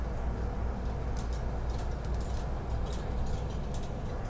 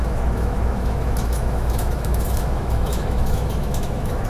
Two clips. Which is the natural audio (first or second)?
first